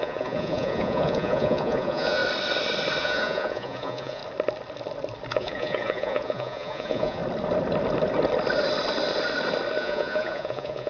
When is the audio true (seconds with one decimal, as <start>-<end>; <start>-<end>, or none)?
2.2-3.0; 4.2-5.3; 7.2-9.8